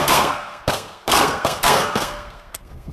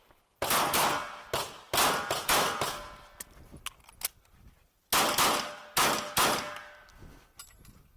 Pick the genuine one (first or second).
second